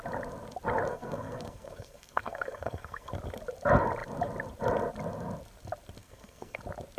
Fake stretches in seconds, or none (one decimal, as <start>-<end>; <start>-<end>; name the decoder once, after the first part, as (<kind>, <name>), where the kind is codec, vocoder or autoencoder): 0.9-3.1 (codec, SNAC); 6.0-6.6